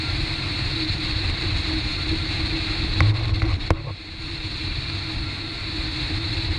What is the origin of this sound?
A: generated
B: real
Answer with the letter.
A